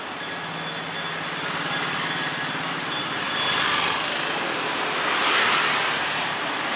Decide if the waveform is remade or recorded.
recorded